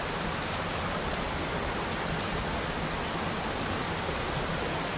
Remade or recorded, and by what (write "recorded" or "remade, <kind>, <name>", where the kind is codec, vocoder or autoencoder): recorded